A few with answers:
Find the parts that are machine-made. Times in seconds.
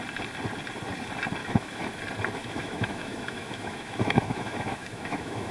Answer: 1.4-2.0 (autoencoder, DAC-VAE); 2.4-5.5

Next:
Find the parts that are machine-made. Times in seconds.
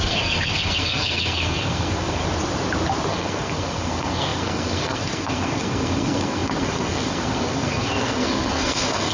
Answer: 0.0-2.2 (codec, SNAC); 3.1-9.1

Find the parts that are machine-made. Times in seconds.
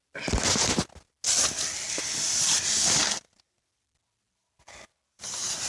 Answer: none